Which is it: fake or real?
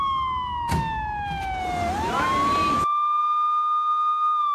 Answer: real